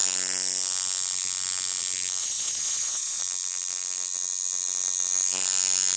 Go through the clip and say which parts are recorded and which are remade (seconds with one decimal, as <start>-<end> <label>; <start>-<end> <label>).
0.0-2.2 recorded; 2.2-3.2 remade; 3.2-6.0 recorded